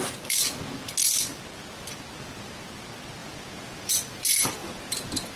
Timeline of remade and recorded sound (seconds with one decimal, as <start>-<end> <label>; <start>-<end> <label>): 0.0-3.2 recorded; 3.2-4.0 remade; 4.0-4.6 recorded; 4.6-5.4 remade